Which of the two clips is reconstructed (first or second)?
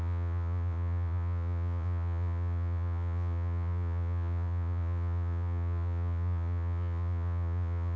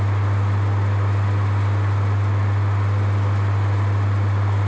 first